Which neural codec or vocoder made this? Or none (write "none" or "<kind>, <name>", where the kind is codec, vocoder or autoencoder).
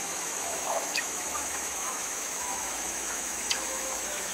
autoencoder, DAC-VAE